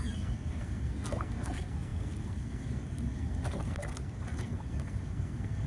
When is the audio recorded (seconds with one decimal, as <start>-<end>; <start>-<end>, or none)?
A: none